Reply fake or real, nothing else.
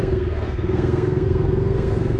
fake